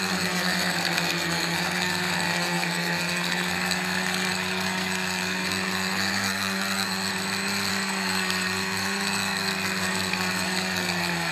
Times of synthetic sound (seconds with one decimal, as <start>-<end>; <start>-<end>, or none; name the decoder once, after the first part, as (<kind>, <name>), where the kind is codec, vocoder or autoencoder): 0.0-7.1 (codec, SNAC); 7.7-11.3